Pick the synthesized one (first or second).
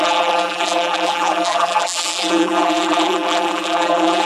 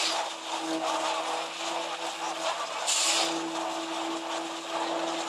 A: first